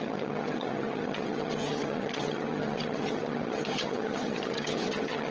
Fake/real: fake